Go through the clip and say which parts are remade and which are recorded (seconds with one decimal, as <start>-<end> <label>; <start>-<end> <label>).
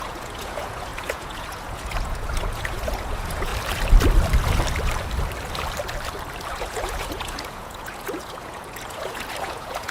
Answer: 0.0-3.5 remade; 3.5-6.5 recorded; 6.5-9.9 remade